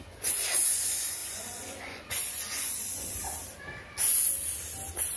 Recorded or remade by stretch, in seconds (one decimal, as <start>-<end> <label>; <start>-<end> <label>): 0.0-3.2 remade; 3.2-5.2 recorded